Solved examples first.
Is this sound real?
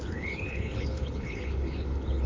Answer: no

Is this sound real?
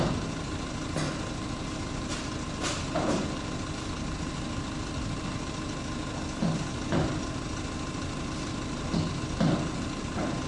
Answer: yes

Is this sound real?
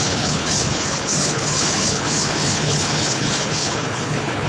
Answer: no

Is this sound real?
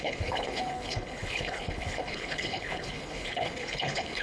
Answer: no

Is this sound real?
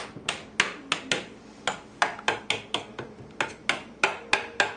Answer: yes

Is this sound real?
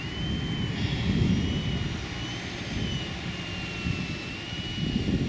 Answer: yes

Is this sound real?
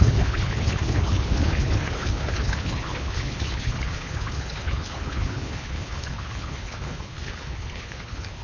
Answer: no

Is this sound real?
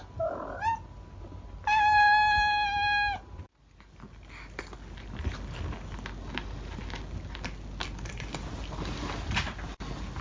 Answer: yes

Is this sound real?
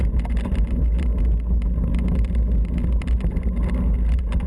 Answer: yes